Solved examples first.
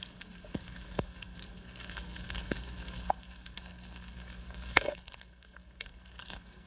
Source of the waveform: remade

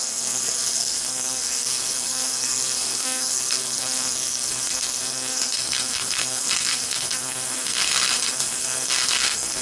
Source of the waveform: remade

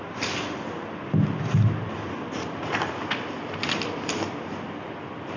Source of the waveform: recorded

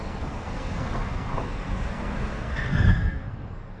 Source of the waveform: remade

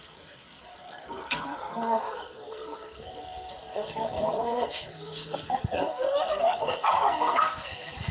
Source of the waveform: remade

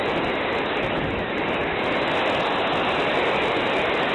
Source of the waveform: recorded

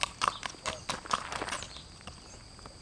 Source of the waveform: recorded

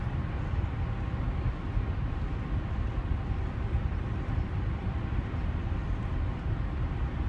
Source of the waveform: recorded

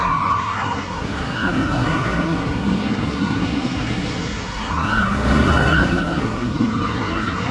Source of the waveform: remade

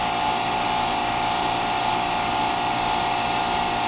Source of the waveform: recorded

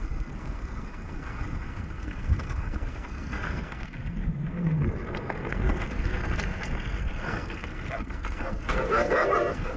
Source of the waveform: remade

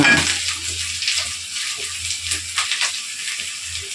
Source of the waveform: recorded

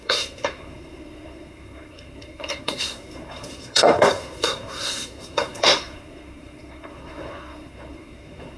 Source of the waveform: remade